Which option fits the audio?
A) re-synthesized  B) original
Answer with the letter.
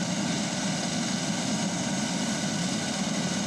B